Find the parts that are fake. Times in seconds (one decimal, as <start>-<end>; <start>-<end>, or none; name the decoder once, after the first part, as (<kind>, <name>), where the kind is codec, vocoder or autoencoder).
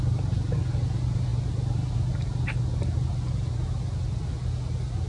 none